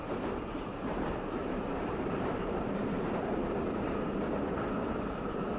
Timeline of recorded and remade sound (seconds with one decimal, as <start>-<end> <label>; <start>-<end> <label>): 0.0-0.7 recorded; 0.7-4.1 remade; 4.1-5.6 recorded

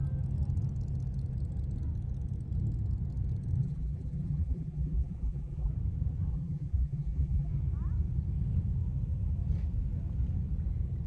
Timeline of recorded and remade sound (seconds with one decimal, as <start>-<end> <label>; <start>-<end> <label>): 0.0-3.6 recorded; 3.6-5.7 remade; 5.7-6.3 recorded; 6.3-7.5 remade; 7.5-11.1 recorded

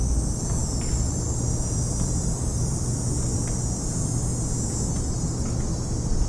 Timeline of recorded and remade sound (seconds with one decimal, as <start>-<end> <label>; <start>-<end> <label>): 0.0-4.3 remade; 4.3-6.3 recorded

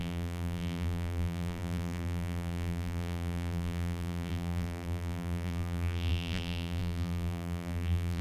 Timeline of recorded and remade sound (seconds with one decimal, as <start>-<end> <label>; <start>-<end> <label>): 0.0-8.2 remade